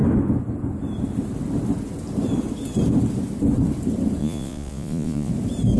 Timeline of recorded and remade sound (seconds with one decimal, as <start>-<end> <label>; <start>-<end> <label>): 0.0-4.2 recorded; 4.2-5.3 remade; 5.3-5.8 recorded